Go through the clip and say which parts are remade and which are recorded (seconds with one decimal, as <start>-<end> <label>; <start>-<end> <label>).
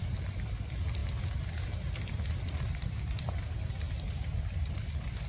0.0-5.3 recorded